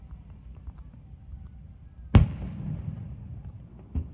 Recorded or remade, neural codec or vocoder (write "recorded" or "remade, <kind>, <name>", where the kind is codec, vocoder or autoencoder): recorded